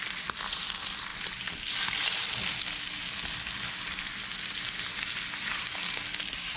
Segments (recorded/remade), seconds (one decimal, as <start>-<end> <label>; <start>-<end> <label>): 0.0-6.6 recorded

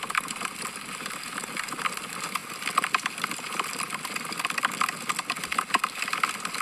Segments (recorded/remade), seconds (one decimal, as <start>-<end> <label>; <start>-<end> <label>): 0.0-6.6 recorded

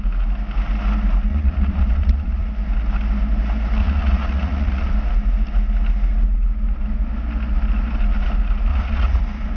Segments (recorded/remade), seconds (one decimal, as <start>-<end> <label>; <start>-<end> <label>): 0.0-1.3 recorded; 1.3-2.5 remade; 2.5-3.8 recorded; 3.8-4.9 remade; 4.9-8.7 recorded; 8.7-9.2 remade; 9.2-9.6 recorded

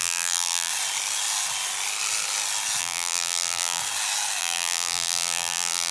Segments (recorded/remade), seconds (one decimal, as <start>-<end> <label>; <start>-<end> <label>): 0.0-0.7 remade; 0.7-2.8 recorded; 2.8-3.8 remade; 3.8-4.4 recorded; 4.4-5.9 remade

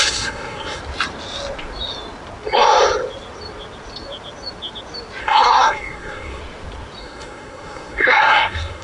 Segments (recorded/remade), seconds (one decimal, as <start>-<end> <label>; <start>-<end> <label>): 0.0-0.8 remade; 0.8-5.2 recorded; 5.2-6.4 remade; 6.4-7.0 recorded; 7.0-8.8 remade

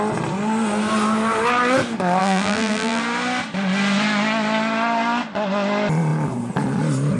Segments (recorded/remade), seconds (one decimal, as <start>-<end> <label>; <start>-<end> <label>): 0.0-2.2 recorded; 2.2-3.0 remade; 3.0-7.2 recorded